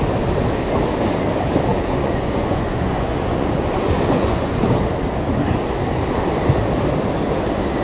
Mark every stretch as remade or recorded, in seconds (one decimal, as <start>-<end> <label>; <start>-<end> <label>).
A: 0.0-1.7 recorded; 1.7-4.6 remade; 4.6-7.8 recorded